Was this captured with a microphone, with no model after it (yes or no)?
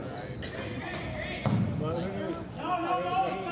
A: yes